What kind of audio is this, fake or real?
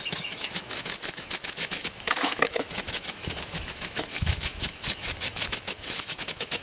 fake